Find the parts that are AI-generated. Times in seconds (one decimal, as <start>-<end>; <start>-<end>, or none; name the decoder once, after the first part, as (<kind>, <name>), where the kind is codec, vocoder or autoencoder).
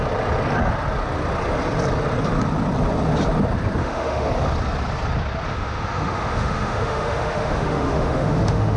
3.8-4.3 (autoencoder, DAC-VAE); 5.5-8.8